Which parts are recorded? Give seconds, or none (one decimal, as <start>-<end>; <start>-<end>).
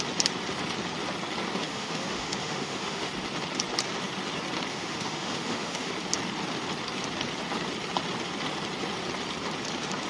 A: 0.0-1.6; 3.1-4.7; 5.9-10.1